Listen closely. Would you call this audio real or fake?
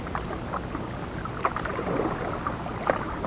real